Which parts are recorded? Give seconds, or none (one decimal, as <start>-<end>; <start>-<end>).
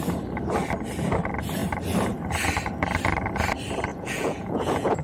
0.0-3.9